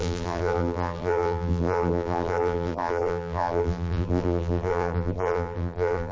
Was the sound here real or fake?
fake